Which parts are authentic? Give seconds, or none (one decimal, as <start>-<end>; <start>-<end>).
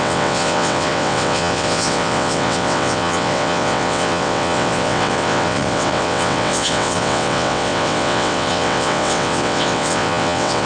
none